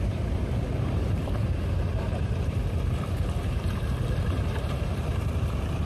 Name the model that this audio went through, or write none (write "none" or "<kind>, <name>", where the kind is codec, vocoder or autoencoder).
vocoder, BigVGAN v2